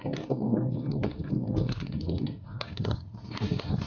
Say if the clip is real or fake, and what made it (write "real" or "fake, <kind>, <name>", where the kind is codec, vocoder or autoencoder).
fake, codec, SNAC